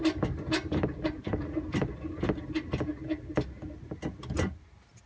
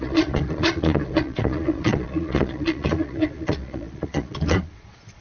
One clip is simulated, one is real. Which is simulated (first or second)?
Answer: second